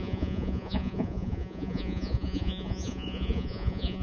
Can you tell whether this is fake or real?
fake